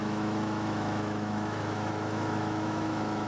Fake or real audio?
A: fake